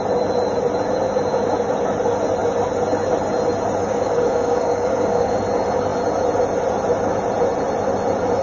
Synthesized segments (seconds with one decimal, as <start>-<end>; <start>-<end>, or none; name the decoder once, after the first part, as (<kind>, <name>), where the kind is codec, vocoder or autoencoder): 3.8-5.4 (codec, DAC)